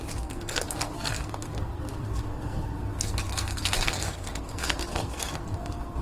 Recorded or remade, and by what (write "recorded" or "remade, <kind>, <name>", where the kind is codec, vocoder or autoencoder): remade, codec, SNAC